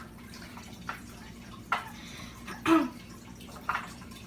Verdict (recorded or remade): remade